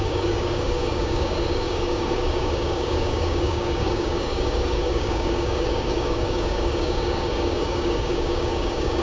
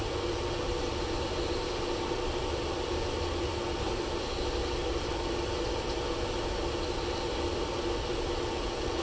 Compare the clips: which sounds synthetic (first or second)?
first